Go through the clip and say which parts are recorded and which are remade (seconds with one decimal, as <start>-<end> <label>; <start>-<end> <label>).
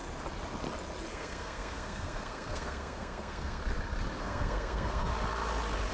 0.0-1.1 recorded; 1.1-3.6 remade; 3.6-4.2 recorded; 4.2-5.1 remade; 5.1-5.9 recorded